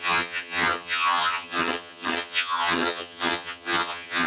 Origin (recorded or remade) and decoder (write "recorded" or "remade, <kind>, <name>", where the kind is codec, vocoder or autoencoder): remade, vocoder, HiFi-GAN